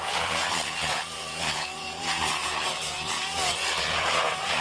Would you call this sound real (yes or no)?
no